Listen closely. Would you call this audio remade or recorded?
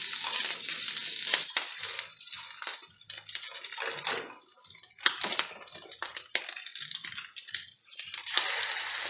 recorded